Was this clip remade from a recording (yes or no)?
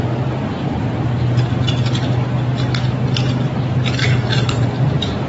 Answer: no